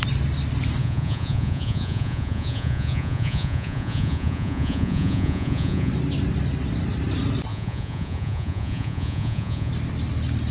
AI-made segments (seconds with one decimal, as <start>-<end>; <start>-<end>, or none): 0.8-5.9; 7.5-9.7